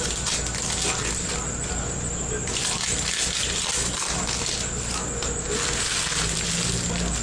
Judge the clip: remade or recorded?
recorded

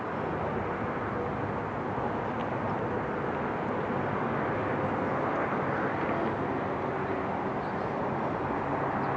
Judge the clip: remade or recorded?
recorded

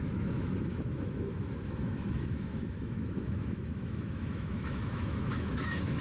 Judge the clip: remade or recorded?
remade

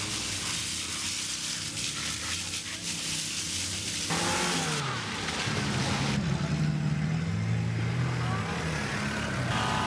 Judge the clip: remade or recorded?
recorded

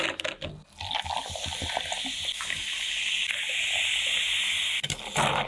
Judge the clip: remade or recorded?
recorded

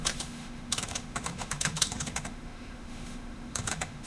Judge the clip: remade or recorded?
remade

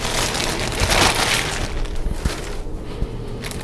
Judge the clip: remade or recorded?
recorded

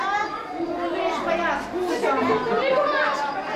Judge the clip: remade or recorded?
recorded